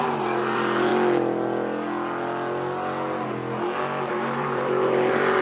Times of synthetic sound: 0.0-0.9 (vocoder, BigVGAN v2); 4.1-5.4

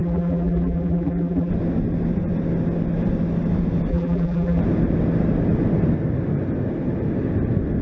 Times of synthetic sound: 0.0-1.5 (vocoder, BigVGAN v2); 3.9-4.6

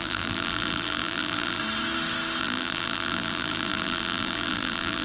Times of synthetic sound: 0.0-1.6 (vocoder, BigVGAN v2); 2.4-5.0

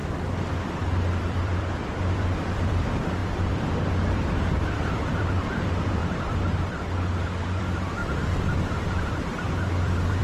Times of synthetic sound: 0.8-6.0 (vocoder, BigVGAN v2); 7.6-8.0; 8.6-10.2

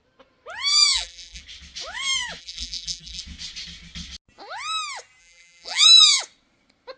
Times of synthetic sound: 0.7-1.4 (vocoder, BigVGAN v2); 2.4-3.2; 5.2-6.2

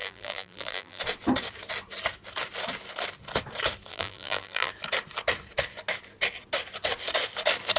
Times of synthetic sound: 0.0-1.0 (vocoder, BigVGAN v2); 3.9-4.7

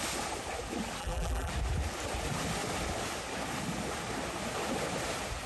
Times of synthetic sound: 1.0-1.5 (vocoder, BigVGAN v2)